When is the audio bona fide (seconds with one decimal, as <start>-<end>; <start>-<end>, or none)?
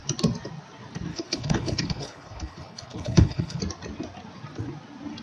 0.0-1.1; 3.6-5.2